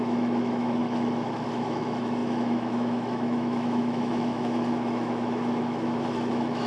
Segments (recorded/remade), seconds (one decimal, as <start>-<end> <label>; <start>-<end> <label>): 0.0-6.7 remade